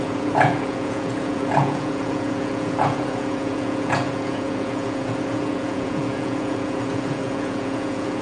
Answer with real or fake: fake